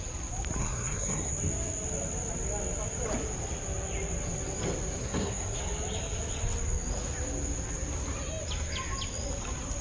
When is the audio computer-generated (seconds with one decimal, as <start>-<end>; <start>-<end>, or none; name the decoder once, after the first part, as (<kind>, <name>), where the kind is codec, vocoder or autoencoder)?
0.6-1.3 (codec, SNAC); 5.0-5.6